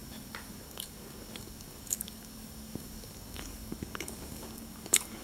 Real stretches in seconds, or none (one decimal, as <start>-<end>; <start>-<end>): none